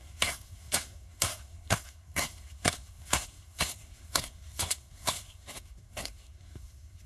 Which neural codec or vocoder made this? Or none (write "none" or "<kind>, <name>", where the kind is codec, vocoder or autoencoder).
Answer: codec, SNAC